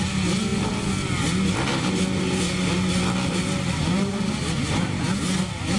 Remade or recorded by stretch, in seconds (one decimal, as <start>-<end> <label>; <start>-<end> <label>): 0.0-5.8 recorded